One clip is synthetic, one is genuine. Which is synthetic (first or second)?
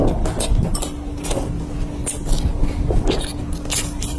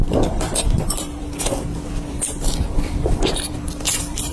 second